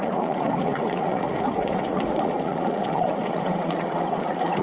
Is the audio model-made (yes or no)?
yes